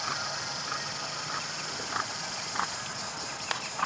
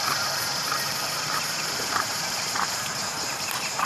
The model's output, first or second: second